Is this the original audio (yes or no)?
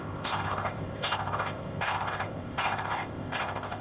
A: no